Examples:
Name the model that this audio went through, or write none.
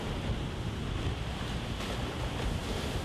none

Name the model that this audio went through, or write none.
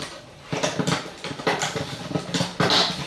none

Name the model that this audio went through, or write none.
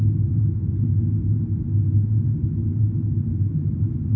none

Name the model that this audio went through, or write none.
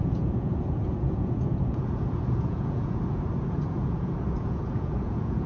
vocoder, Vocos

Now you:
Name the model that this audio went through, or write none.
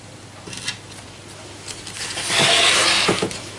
none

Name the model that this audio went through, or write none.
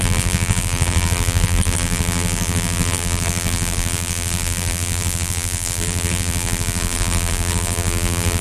vocoder, BigVGAN v2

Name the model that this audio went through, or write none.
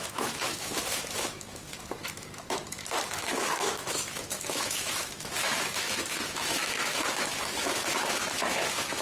autoencoder, DAC-VAE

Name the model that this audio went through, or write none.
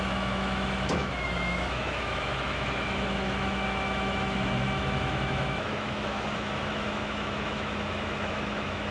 autoencoder, DAC-VAE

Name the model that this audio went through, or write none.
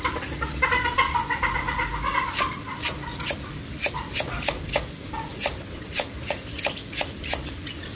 none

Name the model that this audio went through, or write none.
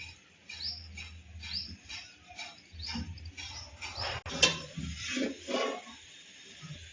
none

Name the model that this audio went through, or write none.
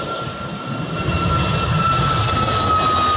none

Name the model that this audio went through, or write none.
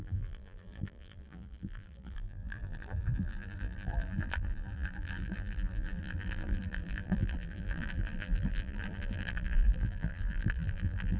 vocoder, BigVGAN v2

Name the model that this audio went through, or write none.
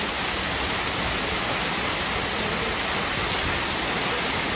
none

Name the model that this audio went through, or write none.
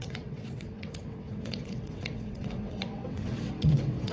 vocoder, WaveNeXt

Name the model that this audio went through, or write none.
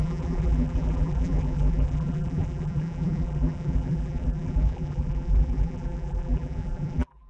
vocoder, BigVGAN v2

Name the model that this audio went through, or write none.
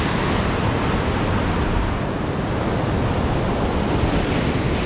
none